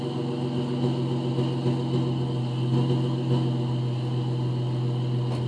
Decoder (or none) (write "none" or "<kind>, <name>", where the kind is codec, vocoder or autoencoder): none